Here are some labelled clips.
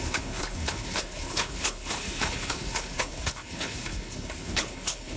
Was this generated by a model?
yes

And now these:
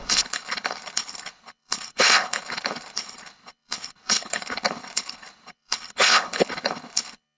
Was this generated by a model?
yes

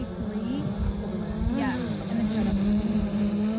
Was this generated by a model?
no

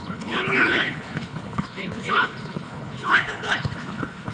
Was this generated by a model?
yes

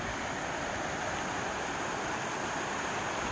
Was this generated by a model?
no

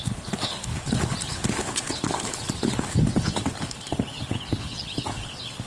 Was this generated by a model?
yes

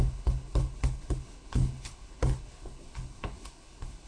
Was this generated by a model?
yes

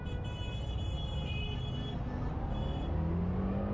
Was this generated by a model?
no